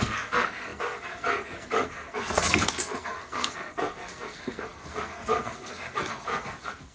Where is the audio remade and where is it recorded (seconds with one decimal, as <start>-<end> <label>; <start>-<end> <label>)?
0.0-6.9 remade